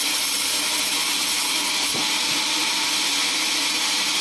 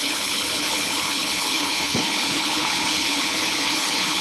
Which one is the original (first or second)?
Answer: first